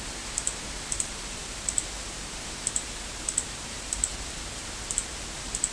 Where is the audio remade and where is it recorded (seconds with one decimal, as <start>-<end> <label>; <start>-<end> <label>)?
0.0-5.7 remade